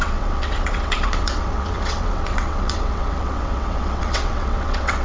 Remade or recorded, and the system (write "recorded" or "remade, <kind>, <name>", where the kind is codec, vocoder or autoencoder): remade, vocoder, WaveNeXt